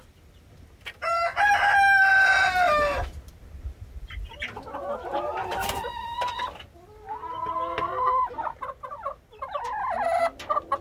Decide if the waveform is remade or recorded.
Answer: recorded